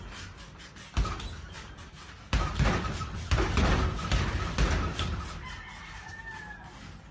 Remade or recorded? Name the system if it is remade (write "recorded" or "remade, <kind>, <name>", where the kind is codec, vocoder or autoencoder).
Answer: recorded